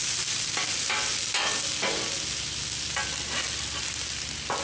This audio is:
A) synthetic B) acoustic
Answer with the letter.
B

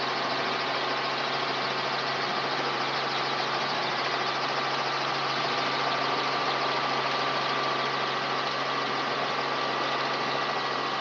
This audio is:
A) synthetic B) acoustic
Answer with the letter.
B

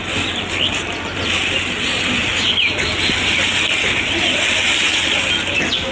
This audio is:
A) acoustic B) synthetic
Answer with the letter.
A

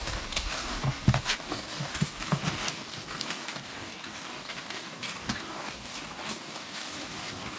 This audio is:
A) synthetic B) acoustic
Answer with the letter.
A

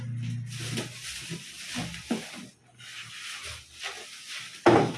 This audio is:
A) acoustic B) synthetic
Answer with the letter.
A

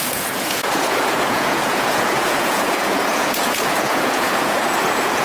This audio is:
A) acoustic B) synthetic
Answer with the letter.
B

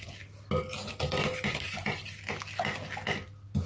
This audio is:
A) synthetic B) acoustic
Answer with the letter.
B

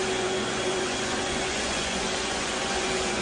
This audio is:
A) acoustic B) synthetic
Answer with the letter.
B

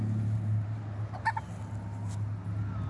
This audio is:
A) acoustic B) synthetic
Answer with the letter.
A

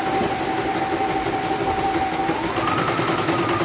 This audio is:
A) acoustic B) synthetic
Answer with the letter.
A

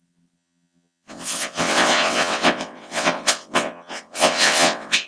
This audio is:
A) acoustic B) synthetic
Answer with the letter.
B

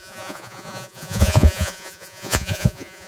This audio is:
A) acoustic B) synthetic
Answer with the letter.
B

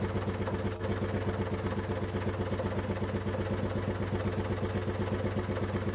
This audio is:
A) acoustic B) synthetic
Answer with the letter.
A